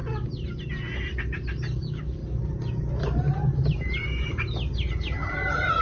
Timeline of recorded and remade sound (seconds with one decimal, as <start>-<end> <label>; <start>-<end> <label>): 0.0-1.8 recorded; 1.8-2.2 remade; 2.2-5.8 recorded

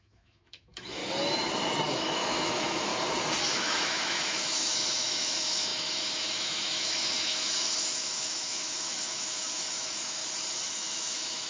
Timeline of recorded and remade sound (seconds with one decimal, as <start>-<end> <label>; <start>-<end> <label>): 0.0-1.0 remade; 1.0-1.9 recorded; 1.9-2.9 remade; 2.9-3.5 recorded; 3.5-10.2 remade; 10.2-10.7 recorded; 10.7-11.5 remade

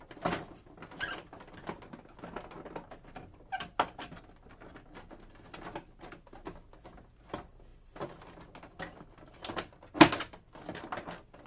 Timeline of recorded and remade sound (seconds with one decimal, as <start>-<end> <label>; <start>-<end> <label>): 0.0-11.5 recorded

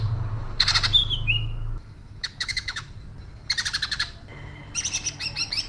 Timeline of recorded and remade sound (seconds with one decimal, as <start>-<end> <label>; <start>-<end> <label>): 0.0-1.0 recorded; 1.0-2.9 remade; 2.9-5.7 recorded

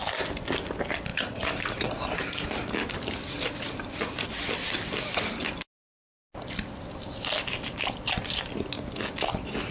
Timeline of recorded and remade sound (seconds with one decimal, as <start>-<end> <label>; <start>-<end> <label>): 0.0-9.7 recorded